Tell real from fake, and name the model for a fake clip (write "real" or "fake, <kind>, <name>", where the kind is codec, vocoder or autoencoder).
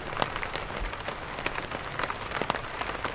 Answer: real